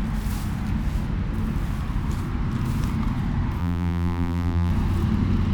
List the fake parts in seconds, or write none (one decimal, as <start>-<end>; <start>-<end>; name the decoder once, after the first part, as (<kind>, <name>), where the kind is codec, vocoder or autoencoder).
3.6-4.7 (vocoder, BigVGAN v2)